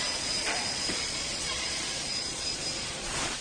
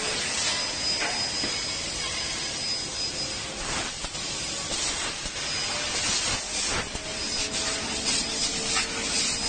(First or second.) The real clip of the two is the second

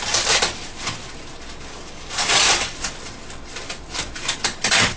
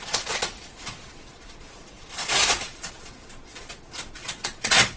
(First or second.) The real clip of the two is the first